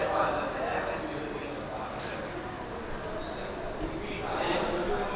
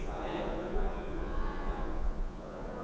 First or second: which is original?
first